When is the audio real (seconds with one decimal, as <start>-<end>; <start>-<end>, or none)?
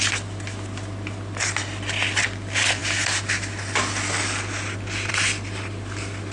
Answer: 0.0-6.3